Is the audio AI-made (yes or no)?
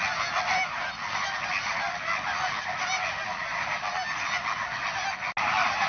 no